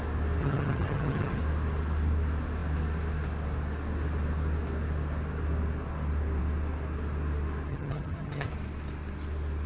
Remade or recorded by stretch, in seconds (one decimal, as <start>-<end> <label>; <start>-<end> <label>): 0.0-0.4 recorded; 0.4-1.4 remade; 1.4-7.7 recorded; 7.7-8.5 remade; 8.5-9.7 recorded